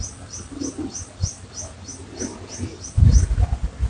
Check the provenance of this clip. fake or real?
real